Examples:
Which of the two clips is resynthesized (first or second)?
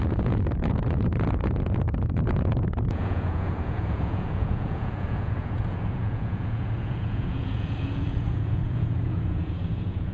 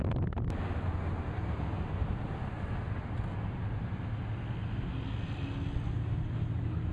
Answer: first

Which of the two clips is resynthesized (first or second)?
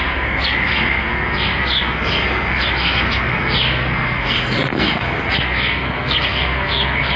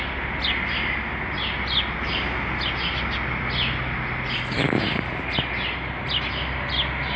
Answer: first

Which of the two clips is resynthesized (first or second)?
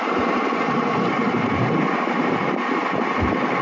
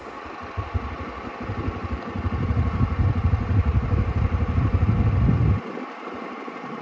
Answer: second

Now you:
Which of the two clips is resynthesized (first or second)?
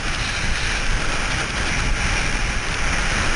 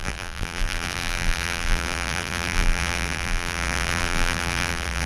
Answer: second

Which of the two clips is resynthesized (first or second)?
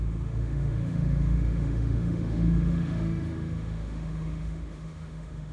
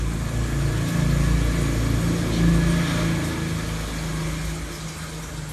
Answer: first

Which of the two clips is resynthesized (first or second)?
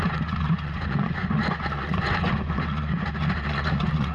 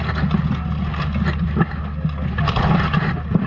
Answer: first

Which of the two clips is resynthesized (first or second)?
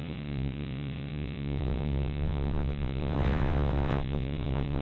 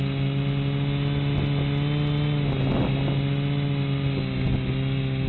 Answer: first